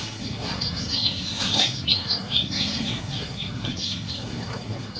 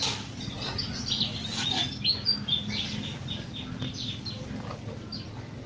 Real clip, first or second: second